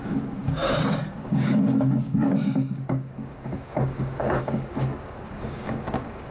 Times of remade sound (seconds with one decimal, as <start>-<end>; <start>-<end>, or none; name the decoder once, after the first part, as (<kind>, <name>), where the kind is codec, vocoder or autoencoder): 0.0-6.3 (codec, DAC)